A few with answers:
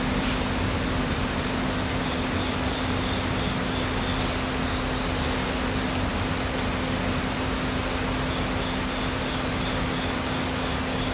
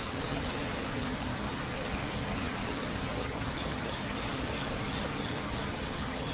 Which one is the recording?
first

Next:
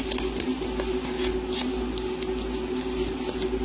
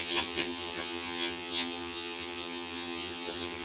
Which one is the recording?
first